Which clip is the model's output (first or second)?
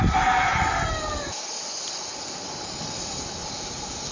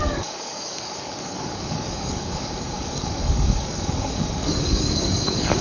second